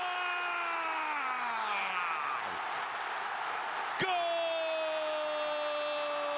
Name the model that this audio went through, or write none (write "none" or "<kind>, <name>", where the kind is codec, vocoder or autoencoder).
none